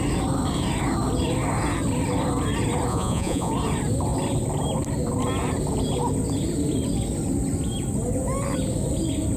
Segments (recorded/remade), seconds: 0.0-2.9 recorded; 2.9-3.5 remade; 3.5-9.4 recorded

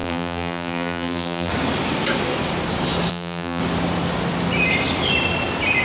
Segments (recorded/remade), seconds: 0.0-1.5 remade; 1.5-3.1 recorded; 3.1-3.6 remade; 3.6-5.8 recorded

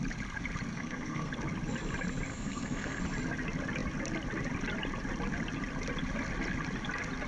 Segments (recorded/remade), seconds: 0.0-0.7 recorded; 0.7-1.3 remade; 1.3-2.3 recorded; 2.3-3.0 remade; 3.0-7.3 recorded

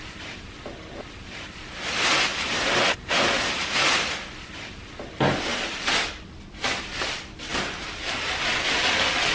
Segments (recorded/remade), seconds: 0.0-2.3 recorded; 2.3-3.8 remade; 3.8-7.5 recorded; 7.5-8.5 remade; 8.5-9.3 recorded